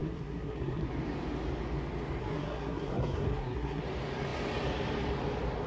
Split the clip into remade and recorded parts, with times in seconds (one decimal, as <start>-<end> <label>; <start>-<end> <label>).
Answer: 0.0-0.9 remade; 0.9-2.2 recorded; 2.2-3.8 remade; 3.8-5.7 recorded